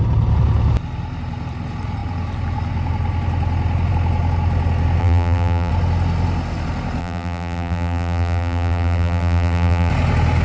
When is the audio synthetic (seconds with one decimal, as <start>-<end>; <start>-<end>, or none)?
5.0-5.7; 7.0-9.9